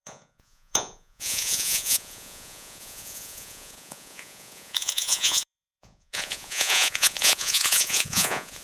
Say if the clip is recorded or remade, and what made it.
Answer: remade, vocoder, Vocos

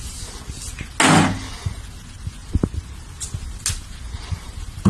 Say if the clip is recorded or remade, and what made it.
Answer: recorded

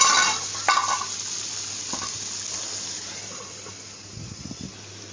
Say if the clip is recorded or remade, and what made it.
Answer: recorded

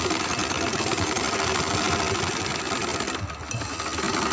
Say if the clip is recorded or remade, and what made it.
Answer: recorded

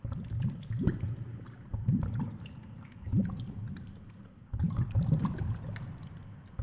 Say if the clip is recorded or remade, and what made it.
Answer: recorded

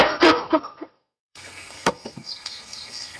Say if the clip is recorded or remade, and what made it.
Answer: remade, codec, SNAC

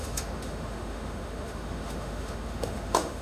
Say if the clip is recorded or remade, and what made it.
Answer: remade, autoencoder, DAC-VAE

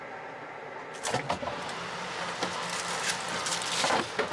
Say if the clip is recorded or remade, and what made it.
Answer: remade, vocoder, BigVGAN v2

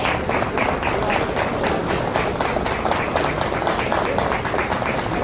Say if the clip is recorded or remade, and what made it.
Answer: recorded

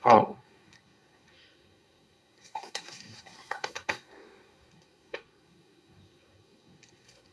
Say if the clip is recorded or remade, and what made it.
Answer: remade, codec, SNAC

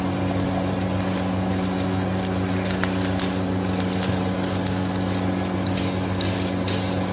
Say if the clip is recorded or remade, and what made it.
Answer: recorded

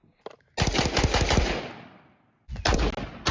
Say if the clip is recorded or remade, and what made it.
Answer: recorded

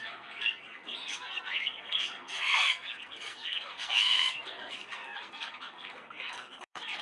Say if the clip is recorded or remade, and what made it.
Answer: remade, codec, SNAC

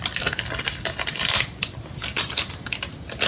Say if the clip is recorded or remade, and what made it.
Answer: recorded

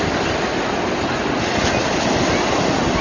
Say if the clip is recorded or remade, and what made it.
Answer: recorded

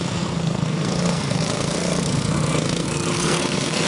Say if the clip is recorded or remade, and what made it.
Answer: remade, codec, SNAC